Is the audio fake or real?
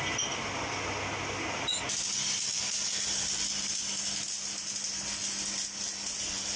real